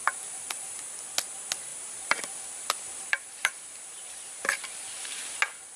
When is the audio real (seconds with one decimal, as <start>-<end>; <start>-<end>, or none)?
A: 0.8-1.7; 5.2-5.8